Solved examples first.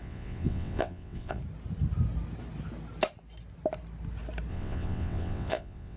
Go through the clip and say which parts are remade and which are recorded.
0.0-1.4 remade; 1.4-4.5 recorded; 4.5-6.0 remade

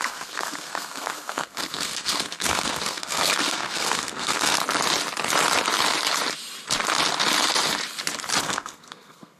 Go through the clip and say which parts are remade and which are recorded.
0.0-4.6 remade; 4.6-8.4 recorded; 8.4-9.4 remade

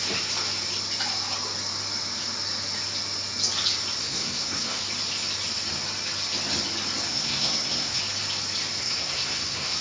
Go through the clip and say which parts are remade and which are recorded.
0.0-4.0 recorded; 4.0-4.8 remade; 4.8-7.1 recorded; 7.1-8.0 remade; 8.0-8.8 recorded; 8.8-9.8 remade